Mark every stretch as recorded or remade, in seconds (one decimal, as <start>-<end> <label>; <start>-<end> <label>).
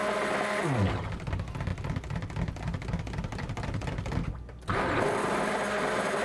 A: 0.0-6.2 recorded